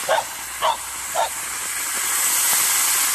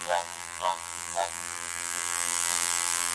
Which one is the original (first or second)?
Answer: first